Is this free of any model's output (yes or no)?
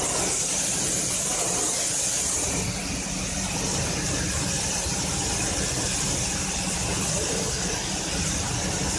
yes